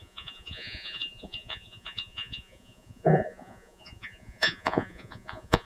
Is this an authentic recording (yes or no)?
no